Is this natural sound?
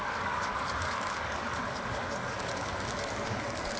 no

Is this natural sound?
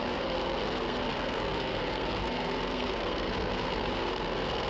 no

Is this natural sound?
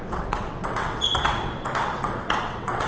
no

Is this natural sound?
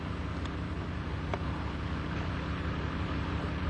yes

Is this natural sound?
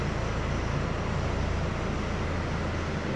yes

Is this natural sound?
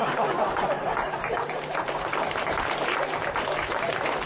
no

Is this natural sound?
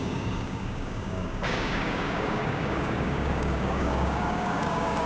no